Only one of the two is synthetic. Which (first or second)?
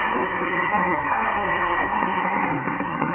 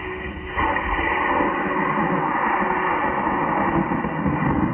first